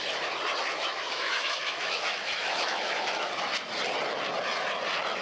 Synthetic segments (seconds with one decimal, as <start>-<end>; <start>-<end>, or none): 0.7-3.3